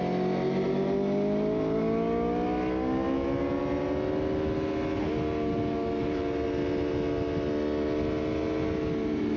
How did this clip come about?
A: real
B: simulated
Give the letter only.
A